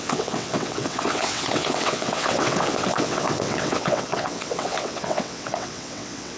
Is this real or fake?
fake